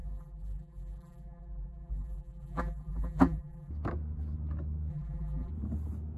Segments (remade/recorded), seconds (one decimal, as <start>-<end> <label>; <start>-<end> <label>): 0.0-3.7 remade; 3.7-4.9 recorded; 4.9-5.5 remade; 5.5-6.2 recorded

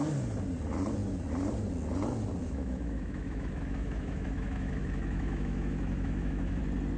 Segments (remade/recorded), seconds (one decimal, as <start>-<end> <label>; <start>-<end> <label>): 0.0-2.4 recorded; 2.4-6.6 remade; 6.6-7.0 recorded